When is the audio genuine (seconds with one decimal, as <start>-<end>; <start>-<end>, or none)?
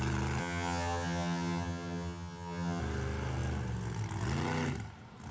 0.0-0.4; 2.8-5.3